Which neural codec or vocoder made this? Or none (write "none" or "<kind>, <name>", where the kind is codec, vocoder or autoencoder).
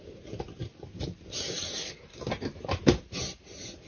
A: none